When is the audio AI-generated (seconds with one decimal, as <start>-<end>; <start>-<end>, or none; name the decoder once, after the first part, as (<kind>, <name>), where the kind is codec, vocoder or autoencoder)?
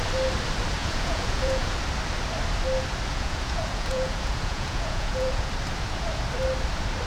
0.8-1.8 (vocoder, Vocos); 3.1-5.5